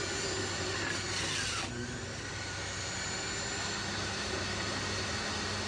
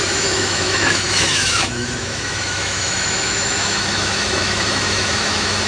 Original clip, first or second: first